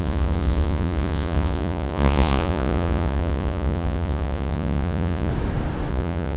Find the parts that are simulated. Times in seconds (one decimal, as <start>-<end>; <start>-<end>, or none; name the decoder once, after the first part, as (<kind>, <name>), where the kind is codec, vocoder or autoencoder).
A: 0.0-5.3 (vocoder, Vocos); 5.9-6.4